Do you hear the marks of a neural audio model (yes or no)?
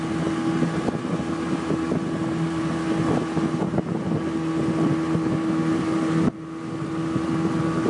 no